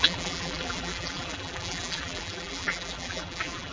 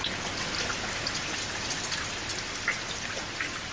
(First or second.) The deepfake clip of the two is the first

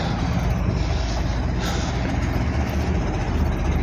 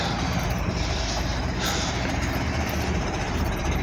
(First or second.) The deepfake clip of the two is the second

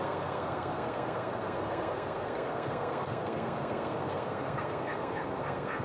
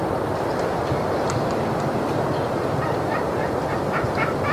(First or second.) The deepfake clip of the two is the first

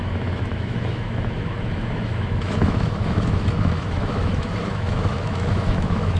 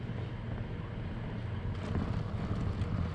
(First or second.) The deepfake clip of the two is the first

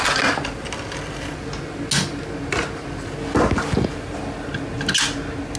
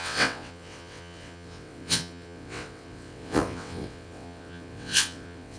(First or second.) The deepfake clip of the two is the second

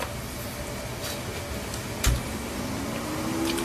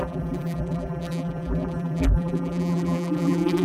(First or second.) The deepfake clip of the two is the second